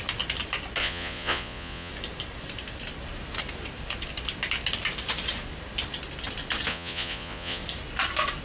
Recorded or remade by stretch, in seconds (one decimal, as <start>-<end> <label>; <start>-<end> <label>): 0.0-0.8 recorded; 0.8-1.9 remade; 1.9-6.7 recorded; 6.7-7.6 remade; 7.6-8.4 recorded